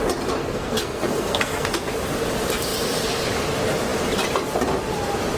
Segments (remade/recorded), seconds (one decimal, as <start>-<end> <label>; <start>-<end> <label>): 0.0-0.4 recorded; 0.4-2.0 remade; 2.0-5.4 recorded